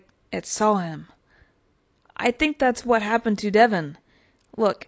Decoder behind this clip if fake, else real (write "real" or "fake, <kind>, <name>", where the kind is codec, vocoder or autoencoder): real